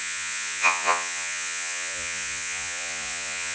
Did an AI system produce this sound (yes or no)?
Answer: yes